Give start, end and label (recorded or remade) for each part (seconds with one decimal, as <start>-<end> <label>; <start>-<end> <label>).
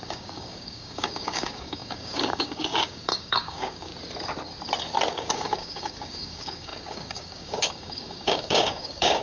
0.0-3.9 remade; 3.9-5.1 recorded; 5.1-9.2 remade